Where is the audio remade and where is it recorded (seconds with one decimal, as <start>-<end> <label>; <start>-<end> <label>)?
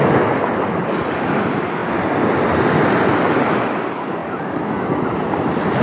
0.0-1.8 recorded; 1.8-2.6 remade; 2.6-5.8 recorded